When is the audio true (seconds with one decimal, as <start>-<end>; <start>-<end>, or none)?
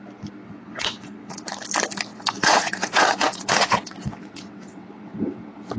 0.0-0.4; 1.5-2.1